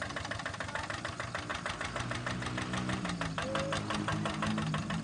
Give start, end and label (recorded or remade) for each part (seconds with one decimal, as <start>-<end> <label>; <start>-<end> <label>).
0.0-5.0 recorded